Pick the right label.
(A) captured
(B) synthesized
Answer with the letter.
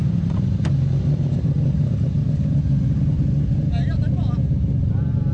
B